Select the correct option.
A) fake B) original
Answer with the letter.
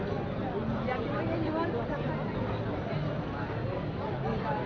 B